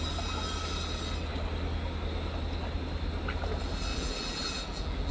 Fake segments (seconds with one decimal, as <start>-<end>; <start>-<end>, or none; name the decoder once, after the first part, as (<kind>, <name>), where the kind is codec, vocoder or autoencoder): 3.9-5.1 (vocoder, BigVGAN v2)